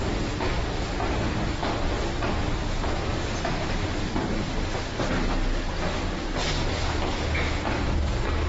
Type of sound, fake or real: real